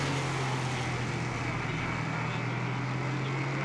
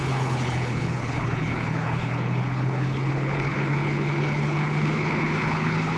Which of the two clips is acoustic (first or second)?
first